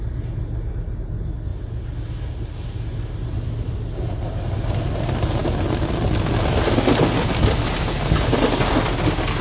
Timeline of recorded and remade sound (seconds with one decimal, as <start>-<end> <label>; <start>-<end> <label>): 0.0-9.4 recorded